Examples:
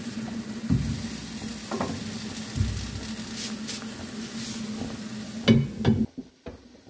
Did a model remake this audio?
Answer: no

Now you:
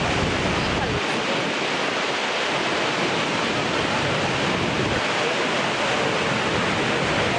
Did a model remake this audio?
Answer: no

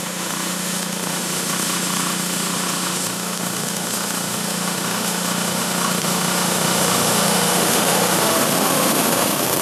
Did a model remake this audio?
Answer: yes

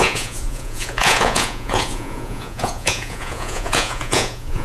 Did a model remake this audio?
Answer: yes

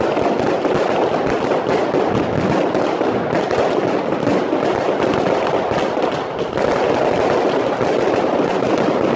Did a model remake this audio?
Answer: no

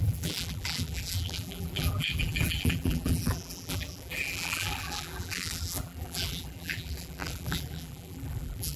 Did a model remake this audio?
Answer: yes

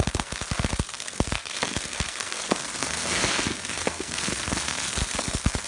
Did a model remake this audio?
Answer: yes